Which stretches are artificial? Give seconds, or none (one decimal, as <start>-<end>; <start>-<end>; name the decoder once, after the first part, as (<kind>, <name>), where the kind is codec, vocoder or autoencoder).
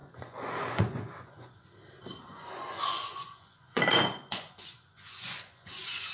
0.0-1.5 (vocoder, Vocos); 2.2-6.1